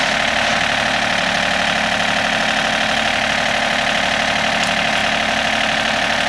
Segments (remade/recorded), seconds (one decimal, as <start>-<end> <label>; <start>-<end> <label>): 0.0-6.3 recorded